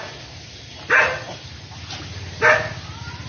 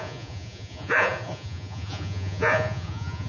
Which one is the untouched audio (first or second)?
first